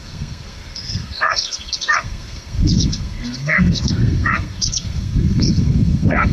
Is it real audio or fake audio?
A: fake